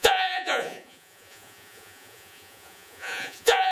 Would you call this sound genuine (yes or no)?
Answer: no